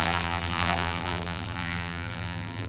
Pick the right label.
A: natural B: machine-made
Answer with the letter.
B